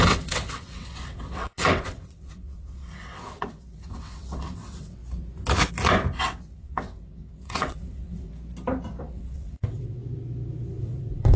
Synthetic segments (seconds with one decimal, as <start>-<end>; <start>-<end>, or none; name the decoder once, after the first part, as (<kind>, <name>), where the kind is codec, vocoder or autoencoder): 0.0-5.0 (vocoder, WaveNeXt); 6.2-8.3; 9.0-10.0; 10.8-11.4